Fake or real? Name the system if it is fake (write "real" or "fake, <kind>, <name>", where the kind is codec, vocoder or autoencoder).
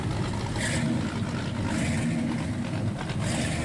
real